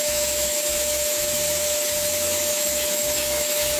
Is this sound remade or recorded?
remade